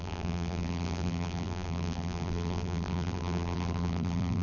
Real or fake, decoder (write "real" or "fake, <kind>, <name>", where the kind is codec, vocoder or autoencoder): fake, vocoder, BigVGAN v2